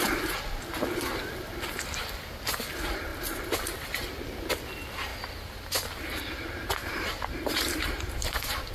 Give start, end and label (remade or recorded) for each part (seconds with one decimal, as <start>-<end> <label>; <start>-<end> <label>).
0.0-5.1 recorded; 5.1-6.2 remade; 6.2-6.8 recorded; 6.8-8.7 remade